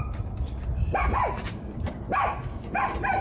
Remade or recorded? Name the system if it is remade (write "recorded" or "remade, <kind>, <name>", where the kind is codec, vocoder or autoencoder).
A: recorded